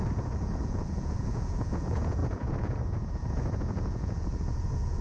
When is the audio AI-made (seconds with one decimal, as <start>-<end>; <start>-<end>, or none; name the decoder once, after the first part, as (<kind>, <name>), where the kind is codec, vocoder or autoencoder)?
0.0-5.0 (vocoder, Vocos)